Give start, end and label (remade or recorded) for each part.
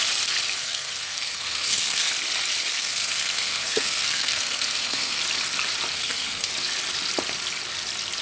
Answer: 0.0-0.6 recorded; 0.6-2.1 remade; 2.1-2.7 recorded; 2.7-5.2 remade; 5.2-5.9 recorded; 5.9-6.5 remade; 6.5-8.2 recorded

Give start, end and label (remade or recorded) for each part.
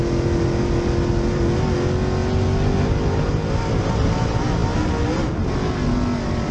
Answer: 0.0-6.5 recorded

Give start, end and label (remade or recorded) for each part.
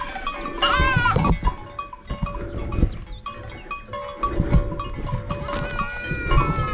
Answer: 0.0-6.7 recorded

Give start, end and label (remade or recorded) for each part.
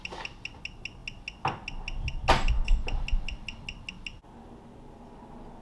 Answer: 0.0-5.6 recorded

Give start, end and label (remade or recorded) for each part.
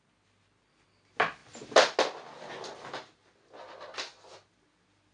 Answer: 0.0-5.1 recorded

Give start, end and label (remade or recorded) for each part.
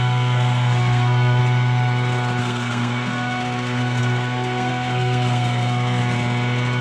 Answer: 0.0-1.4 remade; 1.4-2.4 recorded; 2.4-6.0 remade; 6.0-6.8 recorded